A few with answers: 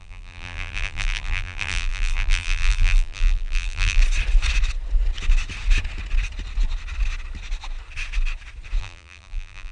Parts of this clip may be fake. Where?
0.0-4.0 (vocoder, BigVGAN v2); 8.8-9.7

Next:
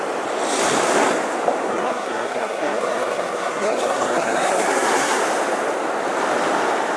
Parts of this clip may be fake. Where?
1.7-5.2 (codec, SNAC)

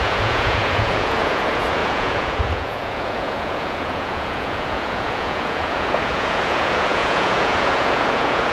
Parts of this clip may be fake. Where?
0.0-8.5 (vocoder, Vocos)

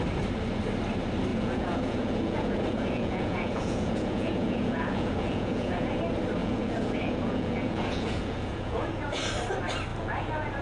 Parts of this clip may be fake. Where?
1.3-6.0 (vocoder, Vocos); 6.4-9.2; 9.9-10.6

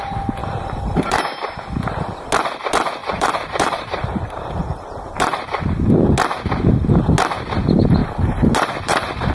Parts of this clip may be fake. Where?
0.4-1.3 (vocoder, BigVGAN v2); 3.0-5.9; 8.0-9.3